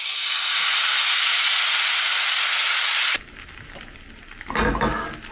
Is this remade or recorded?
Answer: recorded